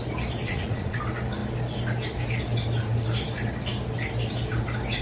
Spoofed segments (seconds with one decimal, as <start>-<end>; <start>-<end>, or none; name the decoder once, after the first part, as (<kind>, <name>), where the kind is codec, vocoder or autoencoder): 0.4-1.0 (vocoder, Vocos)